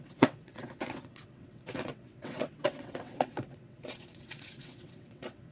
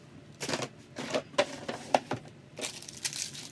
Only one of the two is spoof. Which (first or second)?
first